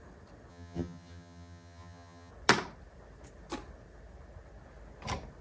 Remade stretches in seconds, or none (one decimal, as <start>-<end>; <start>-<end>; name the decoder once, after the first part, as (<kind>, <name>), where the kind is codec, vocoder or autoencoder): 0.5-2.3 (vocoder, HiFi-GAN)